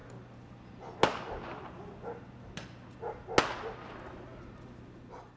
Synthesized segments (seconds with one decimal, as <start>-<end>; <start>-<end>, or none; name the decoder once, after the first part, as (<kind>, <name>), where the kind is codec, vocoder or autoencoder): none